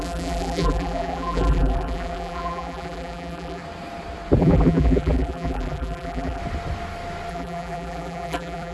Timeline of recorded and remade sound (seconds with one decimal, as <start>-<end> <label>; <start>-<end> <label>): 0.0-3.6 remade; 3.6-4.4 recorded; 4.4-6.4 remade; 6.4-7.3 recorded; 7.3-8.7 remade